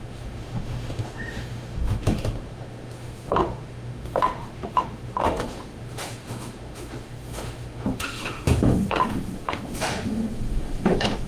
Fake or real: fake